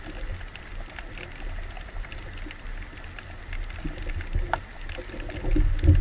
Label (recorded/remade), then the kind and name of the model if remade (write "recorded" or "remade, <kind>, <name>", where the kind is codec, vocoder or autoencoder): recorded